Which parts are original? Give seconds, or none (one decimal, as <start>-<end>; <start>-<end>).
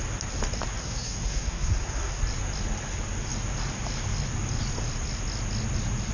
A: 0.0-0.8; 2.2-6.1